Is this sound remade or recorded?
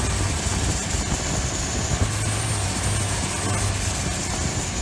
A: recorded